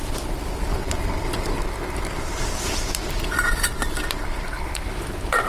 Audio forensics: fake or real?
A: real